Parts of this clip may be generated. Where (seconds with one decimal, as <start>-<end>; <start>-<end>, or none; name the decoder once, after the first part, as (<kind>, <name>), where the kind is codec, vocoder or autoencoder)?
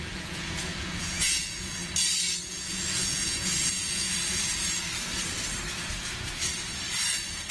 0.0-1.8 (vocoder, Vocos); 2.5-4.1; 5.7-6.5